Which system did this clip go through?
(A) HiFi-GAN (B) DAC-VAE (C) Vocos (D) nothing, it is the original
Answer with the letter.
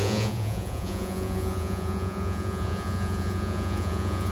C